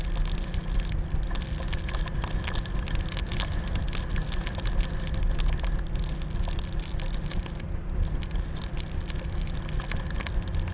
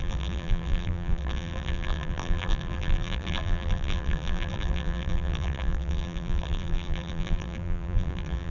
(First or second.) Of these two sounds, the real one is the first